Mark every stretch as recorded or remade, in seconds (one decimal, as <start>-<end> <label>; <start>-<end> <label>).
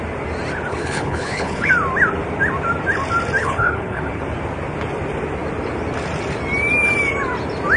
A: 0.0-0.7 recorded; 0.7-1.7 remade; 1.7-3.4 recorded; 3.4-4.2 remade; 4.2-7.8 recorded